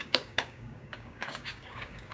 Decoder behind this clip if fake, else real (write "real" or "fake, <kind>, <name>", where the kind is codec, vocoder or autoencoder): fake, codec, DAC